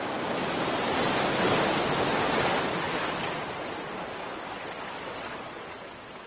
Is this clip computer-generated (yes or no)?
no